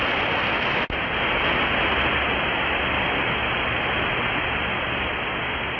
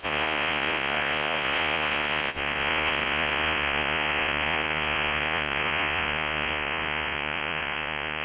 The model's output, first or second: second